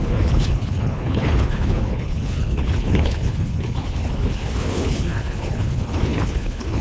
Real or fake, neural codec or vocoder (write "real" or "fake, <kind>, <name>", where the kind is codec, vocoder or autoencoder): fake, codec, HILCodec